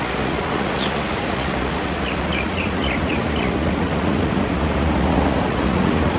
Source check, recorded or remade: remade